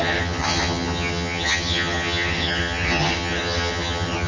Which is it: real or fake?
fake